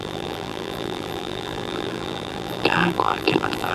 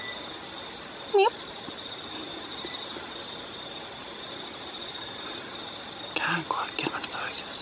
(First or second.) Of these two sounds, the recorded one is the second